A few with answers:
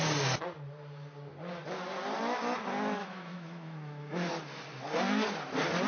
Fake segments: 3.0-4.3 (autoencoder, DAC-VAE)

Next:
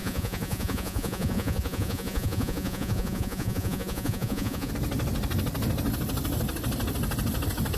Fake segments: 0.0-4.7 (vocoder, Vocos)

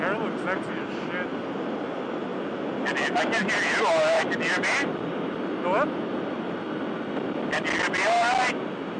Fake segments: none

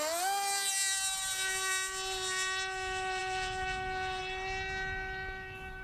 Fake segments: 3.2-4.2 (vocoder, Vocos)

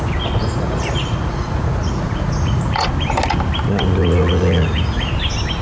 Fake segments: 0.4-2.9 (vocoder, Vocos); 4.0-5.1

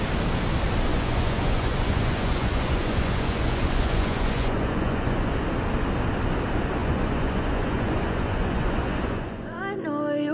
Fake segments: 0.9-5.3 (vocoder, Vocos); 6.8-9.6

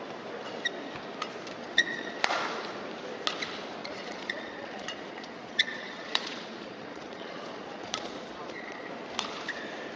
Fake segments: 1.6-2.1 (vocoder, Vocos); 3.8-8.9